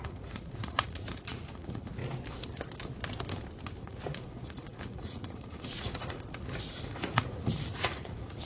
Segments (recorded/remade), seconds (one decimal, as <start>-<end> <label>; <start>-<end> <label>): 0.0-2.0 remade; 2.0-3.8 recorded; 3.8-8.5 remade